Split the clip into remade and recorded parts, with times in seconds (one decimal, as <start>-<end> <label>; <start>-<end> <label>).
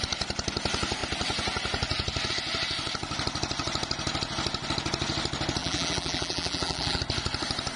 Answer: 0.0-5.6 recorded; 5.6-7.0 remade; 7.0-7.8 recorded